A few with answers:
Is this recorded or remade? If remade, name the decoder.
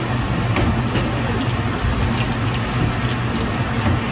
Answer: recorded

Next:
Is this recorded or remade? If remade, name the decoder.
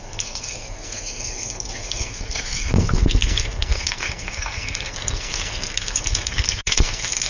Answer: remade, codec, SNAC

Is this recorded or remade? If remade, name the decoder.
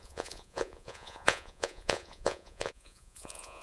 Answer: remade, vocoder, Vocos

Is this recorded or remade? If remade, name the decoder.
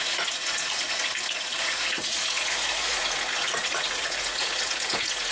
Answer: remade, vocoder, Vocos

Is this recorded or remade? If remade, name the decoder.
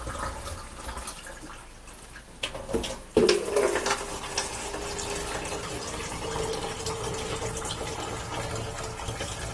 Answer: recorded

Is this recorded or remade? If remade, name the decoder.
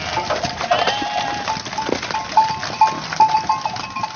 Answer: recorded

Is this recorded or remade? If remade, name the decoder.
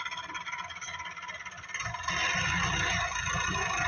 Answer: recorded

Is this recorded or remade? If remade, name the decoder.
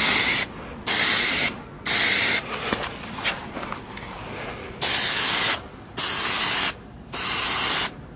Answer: recorded